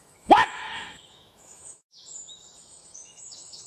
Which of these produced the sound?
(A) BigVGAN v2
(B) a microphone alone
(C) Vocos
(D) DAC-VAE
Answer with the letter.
D